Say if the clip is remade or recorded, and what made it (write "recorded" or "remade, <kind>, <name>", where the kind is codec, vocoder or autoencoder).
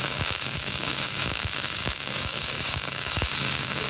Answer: remade, codec, DAC